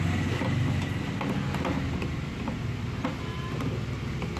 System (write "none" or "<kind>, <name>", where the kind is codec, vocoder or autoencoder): none